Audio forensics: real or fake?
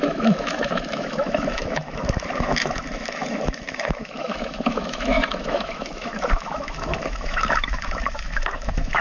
fake